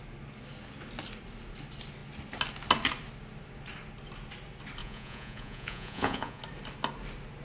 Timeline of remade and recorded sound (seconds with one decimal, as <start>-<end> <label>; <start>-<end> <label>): 0.0-4.8 recorded; 4.8-6.4 remade; 6.4-7.4 recorded